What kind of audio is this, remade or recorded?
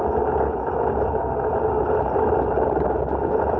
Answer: recorded